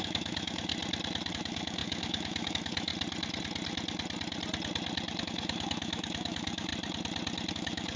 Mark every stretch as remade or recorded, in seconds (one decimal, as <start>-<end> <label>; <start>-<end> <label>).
0.0-0.7 remade; 0.7-1.3 recorded; 1.3-2.9 remade; 2.9-5.2 recorded; 5.2-6.7 remade; 6.7-7.5 recorded; 7.5-8.0 remade